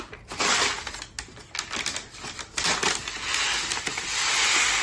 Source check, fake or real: real